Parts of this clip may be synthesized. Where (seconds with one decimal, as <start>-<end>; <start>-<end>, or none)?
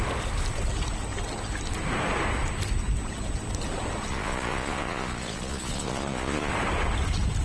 4.1-6.5